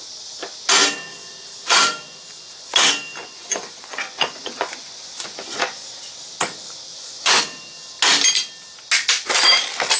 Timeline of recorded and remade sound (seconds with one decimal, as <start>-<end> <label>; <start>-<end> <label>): 0.0-1.1 recorded; 1.1-2.7 remade; 2.7-3.2 recorded; 3.2-6.0 remade; 6.0-6.9 recorded; 6.9-7.4 remade; 7.4-10.0 recorded